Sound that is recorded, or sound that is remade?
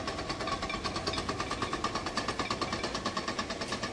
recorded